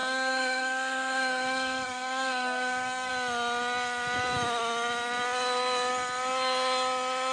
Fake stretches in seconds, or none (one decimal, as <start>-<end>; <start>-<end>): 0.0-3.1